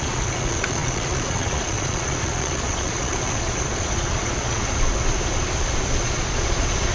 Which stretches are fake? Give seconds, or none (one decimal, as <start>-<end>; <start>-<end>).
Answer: 0.0-4.6; 6.0-6.9